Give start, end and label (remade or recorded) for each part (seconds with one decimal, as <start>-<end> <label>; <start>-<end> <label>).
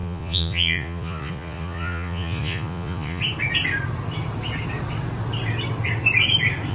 0.0-3.2 remade; 3.2-6.7 recorded